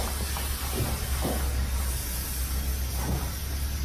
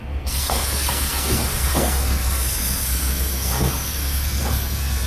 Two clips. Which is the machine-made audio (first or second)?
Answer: second